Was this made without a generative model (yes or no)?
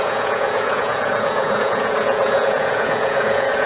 no